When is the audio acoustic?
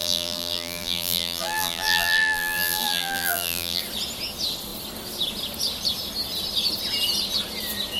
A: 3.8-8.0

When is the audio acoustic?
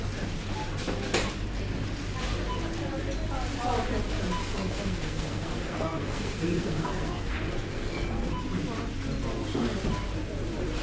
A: 0.0-4.4; 8.3-10.8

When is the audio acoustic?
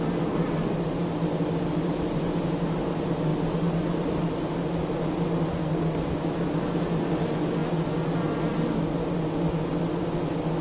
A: 0.0-5.5; 6.1-10.6